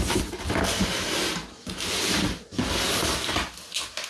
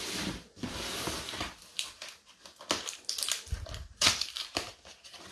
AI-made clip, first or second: second